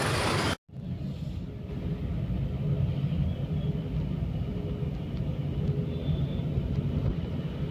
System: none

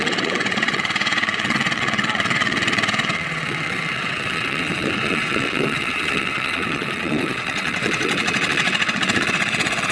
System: vocoder, WaveNeXt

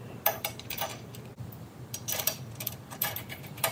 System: vocoder, BigVGAN v2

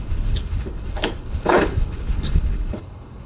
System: codec, HILCodec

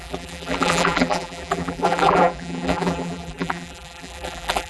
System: vocoder, BigVGAN v2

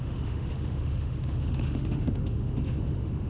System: autoencoder, DAC-VAE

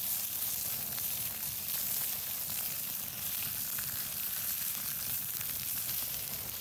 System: vocoder, BigVGAN v2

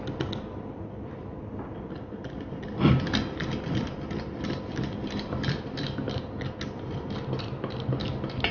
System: none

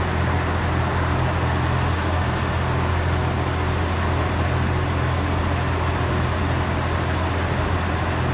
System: none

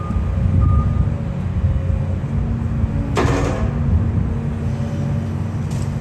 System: none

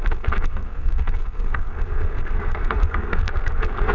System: codec, SNAC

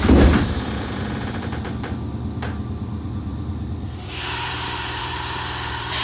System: vocoder, BigVGAN v2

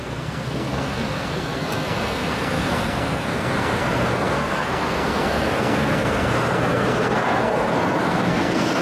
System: codec, SNAC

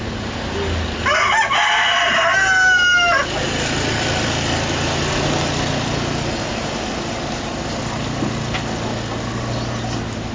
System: none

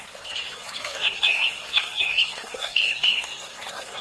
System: codec, SNAC